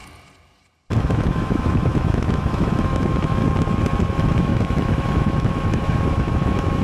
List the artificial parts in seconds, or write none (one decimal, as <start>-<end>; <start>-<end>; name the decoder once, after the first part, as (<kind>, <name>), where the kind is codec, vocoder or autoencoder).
1.0-3.4 (autoencoder, DAC-VAE); 4.1-6.8